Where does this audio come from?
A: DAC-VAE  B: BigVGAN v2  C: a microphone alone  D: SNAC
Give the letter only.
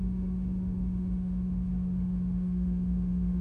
A